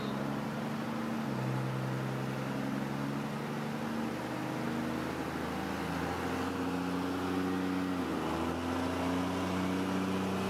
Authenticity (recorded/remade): recorded